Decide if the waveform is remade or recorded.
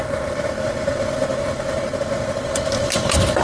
remade